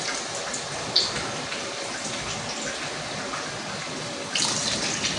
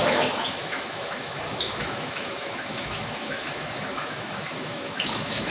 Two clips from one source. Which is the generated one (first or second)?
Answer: second